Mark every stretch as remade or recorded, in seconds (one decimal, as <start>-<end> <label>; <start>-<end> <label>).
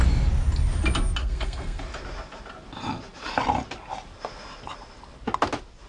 0.0-1.2 recorded; 1.2-1.8 remade; 1.8-5.9 recorded